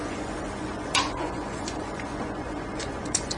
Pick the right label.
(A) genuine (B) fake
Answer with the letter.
B